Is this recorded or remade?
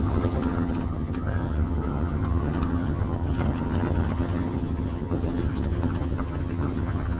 remade